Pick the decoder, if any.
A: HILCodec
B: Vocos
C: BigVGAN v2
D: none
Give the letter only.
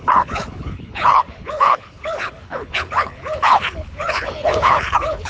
A